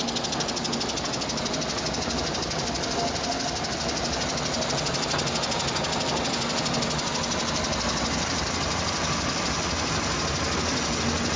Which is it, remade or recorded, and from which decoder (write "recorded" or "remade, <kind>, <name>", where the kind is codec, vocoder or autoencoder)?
recorded